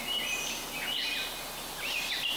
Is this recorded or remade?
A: recorded